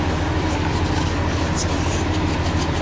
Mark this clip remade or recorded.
recorded